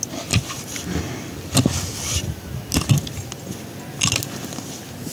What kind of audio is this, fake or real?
real